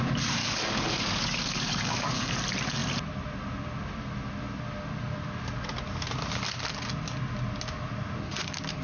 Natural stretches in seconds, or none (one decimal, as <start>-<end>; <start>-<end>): 0.0-0.4; 2.4-8.8